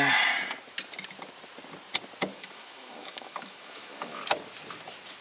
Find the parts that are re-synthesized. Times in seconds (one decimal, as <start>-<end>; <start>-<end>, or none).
2.3-4.2